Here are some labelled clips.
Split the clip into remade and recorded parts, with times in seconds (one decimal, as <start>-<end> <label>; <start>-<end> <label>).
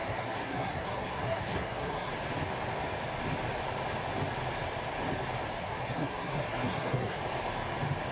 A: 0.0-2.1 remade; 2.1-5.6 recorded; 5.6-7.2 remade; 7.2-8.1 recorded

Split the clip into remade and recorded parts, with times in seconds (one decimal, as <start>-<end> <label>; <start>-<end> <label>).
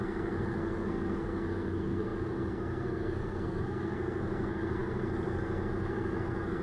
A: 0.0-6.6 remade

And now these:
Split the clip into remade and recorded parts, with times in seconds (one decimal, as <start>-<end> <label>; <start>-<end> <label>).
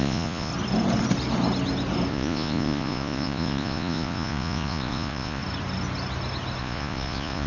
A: 0.0-0.5 remade; 0.5-2.1 recorded; 2.1-5.4 remade; 5.4-6.6 recorded; 6.6-7.5 remade